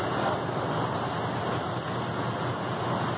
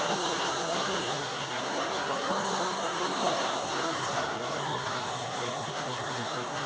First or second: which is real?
first